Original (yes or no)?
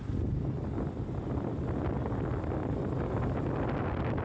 yes